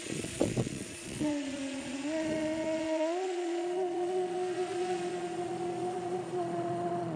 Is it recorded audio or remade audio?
remade